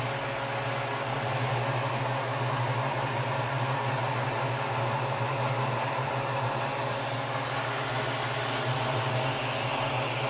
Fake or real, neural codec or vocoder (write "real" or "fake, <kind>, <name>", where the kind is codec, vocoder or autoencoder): real